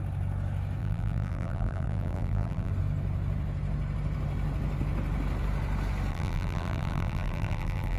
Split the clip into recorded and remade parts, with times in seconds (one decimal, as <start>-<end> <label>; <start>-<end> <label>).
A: 0.0-0.8 recorded; 0.8-2.7 remade; 2.7-6.1 recorded; 6.1-8.0 remade